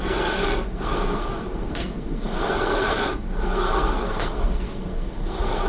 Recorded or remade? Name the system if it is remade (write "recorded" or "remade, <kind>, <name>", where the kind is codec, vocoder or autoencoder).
remade, codec, SNAC